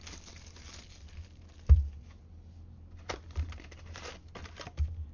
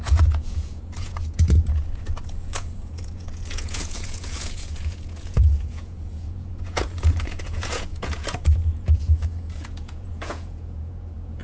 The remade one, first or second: second